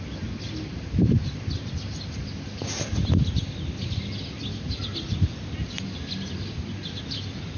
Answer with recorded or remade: recorded